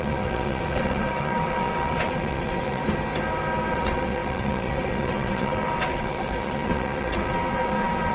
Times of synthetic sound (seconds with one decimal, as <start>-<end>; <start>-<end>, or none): 0.0-2.8; 3.7-8.1